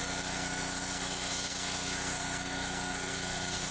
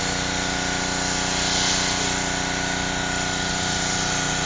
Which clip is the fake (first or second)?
first